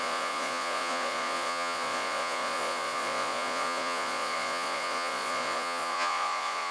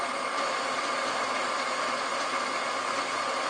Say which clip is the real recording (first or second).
second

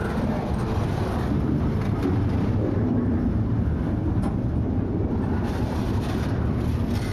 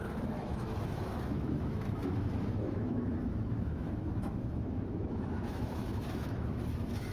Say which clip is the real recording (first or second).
first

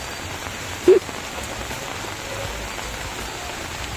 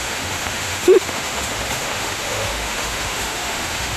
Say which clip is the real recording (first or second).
first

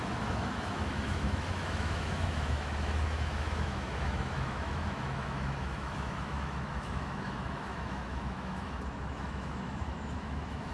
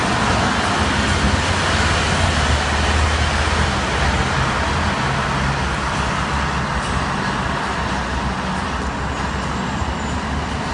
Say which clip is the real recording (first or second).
second